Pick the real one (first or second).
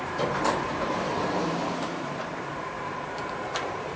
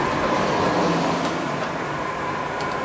second